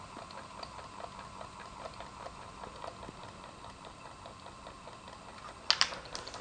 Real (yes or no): yes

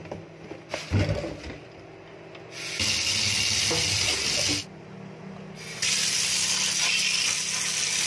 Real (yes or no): yes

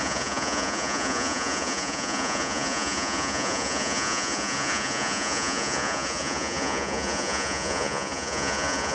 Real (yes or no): no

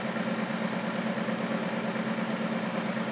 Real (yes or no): yes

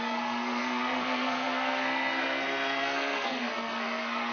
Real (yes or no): no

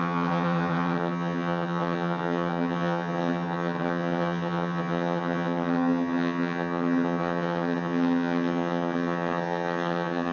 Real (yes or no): no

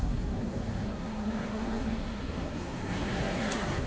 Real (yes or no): no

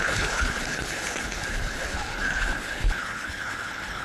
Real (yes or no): no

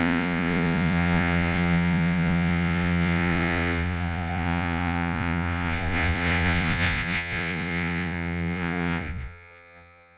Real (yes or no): no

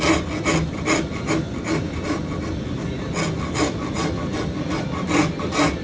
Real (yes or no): yes